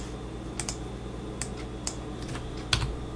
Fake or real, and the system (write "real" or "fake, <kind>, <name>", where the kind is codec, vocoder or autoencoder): real